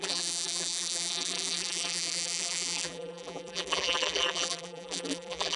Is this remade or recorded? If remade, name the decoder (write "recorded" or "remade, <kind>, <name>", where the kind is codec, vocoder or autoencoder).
remade, vocoder, BigVGAN v2